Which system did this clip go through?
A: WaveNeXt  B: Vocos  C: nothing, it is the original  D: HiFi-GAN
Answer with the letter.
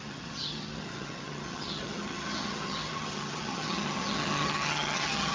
D